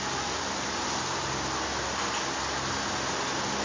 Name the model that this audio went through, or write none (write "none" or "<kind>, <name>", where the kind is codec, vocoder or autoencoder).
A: none